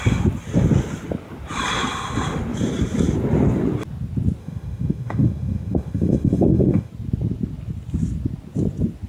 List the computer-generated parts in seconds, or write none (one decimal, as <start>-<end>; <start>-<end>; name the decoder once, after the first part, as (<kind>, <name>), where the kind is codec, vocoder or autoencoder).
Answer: 4.4-6.9 (autoencoder, DAC-VAE)